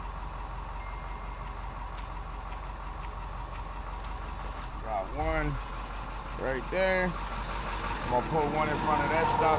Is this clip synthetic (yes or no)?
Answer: no